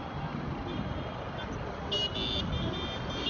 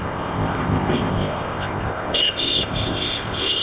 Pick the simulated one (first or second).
second